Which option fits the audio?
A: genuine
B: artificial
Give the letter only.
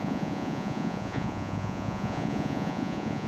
B